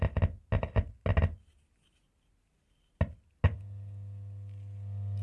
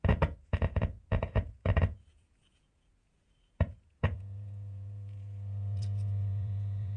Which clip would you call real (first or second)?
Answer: first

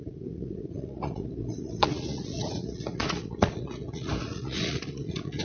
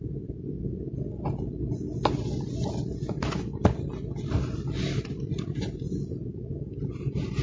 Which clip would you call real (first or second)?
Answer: second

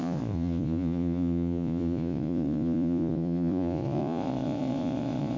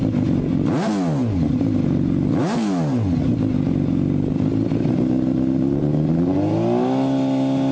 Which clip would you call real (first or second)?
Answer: second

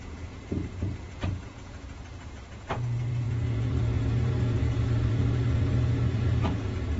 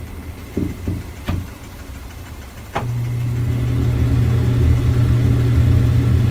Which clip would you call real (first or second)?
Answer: second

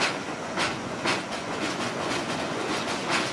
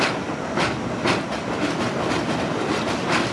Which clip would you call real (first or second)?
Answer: second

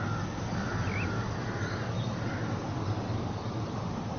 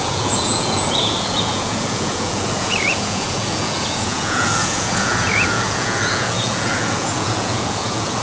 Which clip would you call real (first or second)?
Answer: first